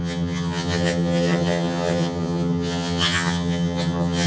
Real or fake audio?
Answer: fake